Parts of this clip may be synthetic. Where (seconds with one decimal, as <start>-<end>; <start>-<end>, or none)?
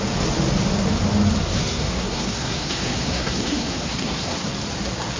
1.4-4.5